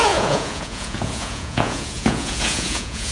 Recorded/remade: remade